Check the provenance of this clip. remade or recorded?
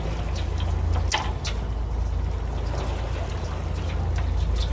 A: recorded